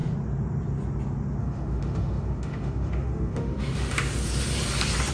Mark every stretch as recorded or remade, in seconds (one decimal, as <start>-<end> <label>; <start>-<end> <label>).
0.0-1.4 recorded; 1.4-4.0 remade; 4.0-5.1 recorded